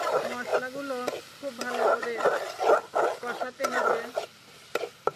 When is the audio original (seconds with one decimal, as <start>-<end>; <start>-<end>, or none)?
0.0-5.2